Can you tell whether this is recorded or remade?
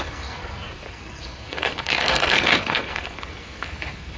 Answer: remade